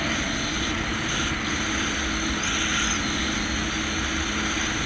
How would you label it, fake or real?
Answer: real